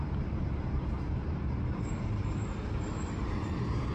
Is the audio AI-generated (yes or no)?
no